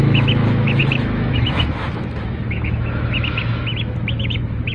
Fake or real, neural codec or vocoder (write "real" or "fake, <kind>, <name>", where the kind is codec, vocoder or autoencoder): fake, autoencoder, DAC-VAE